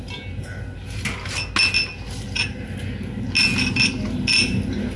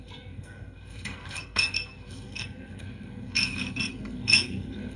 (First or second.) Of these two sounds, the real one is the first